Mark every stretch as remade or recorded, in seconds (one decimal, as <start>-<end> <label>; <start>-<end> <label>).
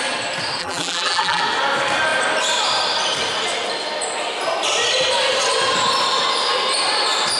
0.0-0.6 recorded; 0.6-1.4 remade; 1.4-7.4 recorded